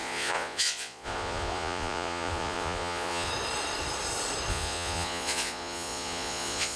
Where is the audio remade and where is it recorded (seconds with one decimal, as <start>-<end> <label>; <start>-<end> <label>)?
0.0-3.3 remade; 3.3-4.5 recorded; 4.5-6.8 remade